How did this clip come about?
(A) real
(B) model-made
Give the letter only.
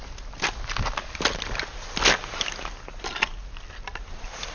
A